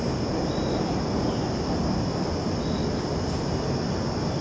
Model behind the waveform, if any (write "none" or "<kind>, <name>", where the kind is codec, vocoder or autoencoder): none